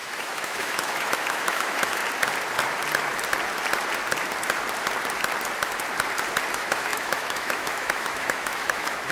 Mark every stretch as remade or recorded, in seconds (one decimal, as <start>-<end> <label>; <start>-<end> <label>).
0.0-2.0 remade; 2.0-6.5 recorded; 6.5-9.1 remade